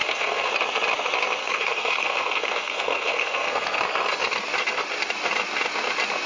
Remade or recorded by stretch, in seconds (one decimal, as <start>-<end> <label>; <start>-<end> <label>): 0.0-0.5 remade; 0.5-1.4 recorded; 1.4-3.8 remade; 3.8-6.3 recorded